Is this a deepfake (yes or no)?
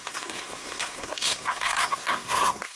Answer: yes